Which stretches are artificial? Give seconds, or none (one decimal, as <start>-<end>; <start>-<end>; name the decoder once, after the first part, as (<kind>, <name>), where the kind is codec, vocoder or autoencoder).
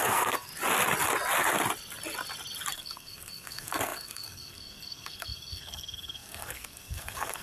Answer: 0.0-0.5 (codec, SNAC); 2.7-7.4